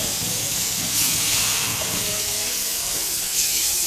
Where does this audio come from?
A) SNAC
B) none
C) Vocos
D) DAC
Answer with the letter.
A